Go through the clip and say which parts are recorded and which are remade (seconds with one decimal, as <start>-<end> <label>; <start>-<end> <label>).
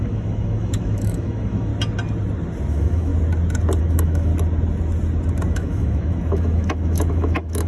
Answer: 0.0-1.7 remade; 1.7-2.7 recorded; 2.7-3.1 remade; 3.1-3.8 recorded; 3.8-4.3 remade; 4.3-5.5 recorded; 5.5-7.7 remade